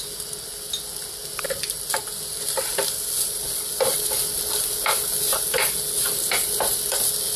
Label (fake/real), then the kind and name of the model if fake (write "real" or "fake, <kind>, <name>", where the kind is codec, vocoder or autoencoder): real